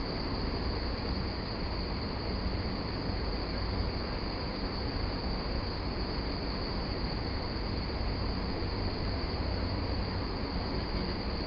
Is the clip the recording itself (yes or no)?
yes